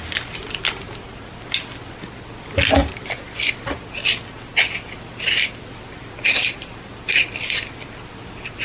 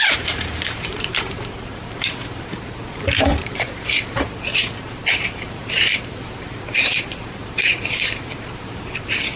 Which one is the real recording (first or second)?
first